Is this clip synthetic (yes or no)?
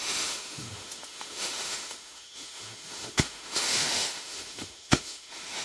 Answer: yes